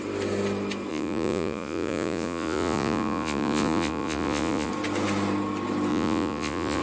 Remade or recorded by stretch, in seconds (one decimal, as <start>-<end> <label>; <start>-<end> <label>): 0.0-0.9 recorded; 0.9-4.7 remade; 4.7-5.9 recorded; 5.9-6.8 remade

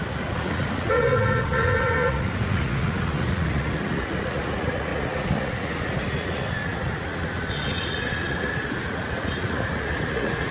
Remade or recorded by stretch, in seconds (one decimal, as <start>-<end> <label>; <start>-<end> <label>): 0.0-10.5 remade

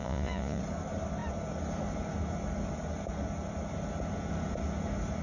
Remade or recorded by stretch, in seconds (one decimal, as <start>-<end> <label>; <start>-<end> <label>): 0.0-0.6 remade; 0.6-5.2 recorded